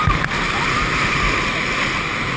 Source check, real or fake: real